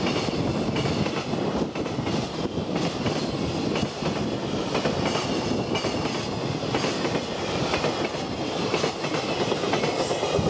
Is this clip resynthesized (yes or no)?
no